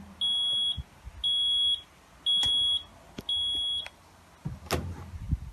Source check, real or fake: real